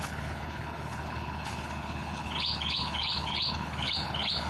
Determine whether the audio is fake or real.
fake